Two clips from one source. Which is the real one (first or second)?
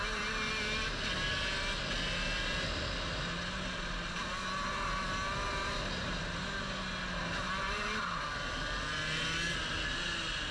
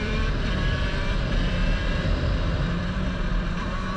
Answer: first